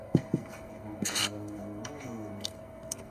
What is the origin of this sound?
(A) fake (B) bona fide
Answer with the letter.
A